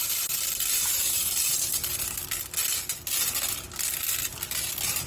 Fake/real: real